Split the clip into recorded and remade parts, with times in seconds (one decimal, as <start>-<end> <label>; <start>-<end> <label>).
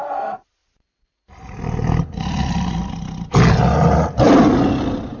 0.0-5.2 recorded